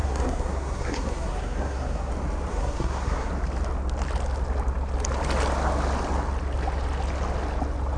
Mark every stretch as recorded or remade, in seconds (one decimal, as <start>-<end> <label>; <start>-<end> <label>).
0.0-2.1 remade; 2.1-2.5 recorded; 2.5-3.3 remade; 3.3-8.0 recorded